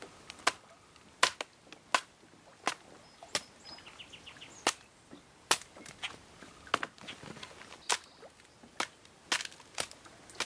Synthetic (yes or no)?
no